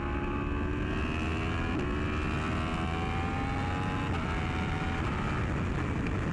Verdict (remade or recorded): recorded